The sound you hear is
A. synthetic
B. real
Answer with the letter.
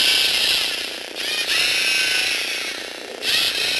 B